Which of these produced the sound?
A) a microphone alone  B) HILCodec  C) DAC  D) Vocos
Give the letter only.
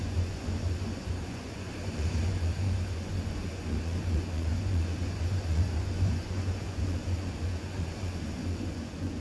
D